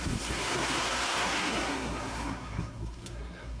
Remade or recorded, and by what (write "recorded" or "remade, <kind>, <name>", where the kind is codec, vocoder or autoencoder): remade, codec, SNAC